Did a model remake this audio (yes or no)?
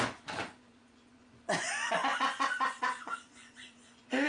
yes